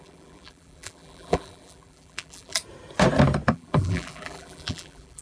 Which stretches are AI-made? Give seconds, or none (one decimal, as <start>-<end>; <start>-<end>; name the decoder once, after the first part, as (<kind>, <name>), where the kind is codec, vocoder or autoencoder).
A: 0.0-2.6 (vocoder, BigVGAN v2); 3.5-5.2